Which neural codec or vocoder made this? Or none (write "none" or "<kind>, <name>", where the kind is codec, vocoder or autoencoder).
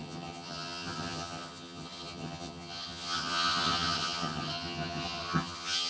vocoder, HiFi-GAN